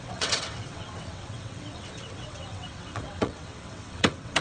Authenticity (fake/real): fake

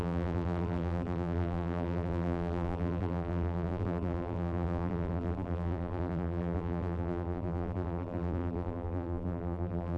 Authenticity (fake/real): fake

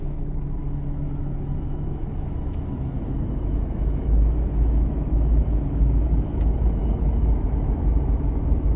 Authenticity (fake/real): fake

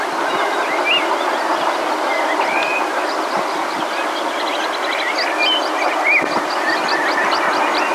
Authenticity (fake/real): real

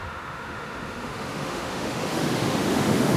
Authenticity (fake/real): fake